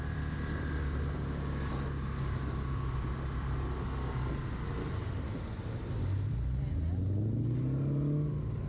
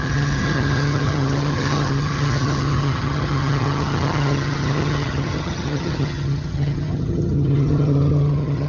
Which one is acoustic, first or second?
first